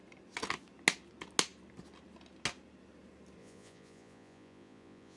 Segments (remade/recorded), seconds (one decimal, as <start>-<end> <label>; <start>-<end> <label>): 0.0-3.4 recorded; 3.4-5.2 remade